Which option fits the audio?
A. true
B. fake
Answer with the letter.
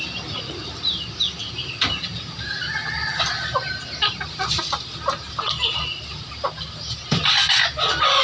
A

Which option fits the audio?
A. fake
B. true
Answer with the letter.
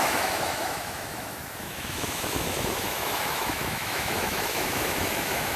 A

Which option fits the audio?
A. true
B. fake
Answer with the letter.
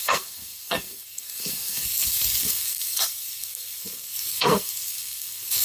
B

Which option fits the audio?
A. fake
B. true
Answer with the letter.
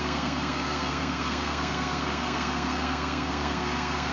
A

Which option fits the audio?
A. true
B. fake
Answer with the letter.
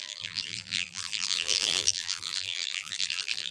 B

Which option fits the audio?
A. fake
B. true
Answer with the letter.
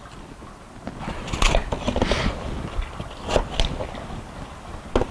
B